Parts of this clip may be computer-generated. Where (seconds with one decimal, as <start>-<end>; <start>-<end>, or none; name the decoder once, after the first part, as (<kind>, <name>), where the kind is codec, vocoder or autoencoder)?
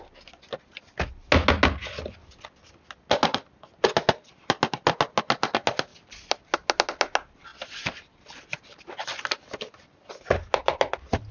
none